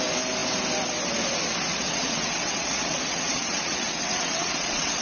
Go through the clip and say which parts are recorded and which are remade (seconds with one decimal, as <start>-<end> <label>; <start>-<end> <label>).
0.0-1.7 recorded; 1.7-5.0 remade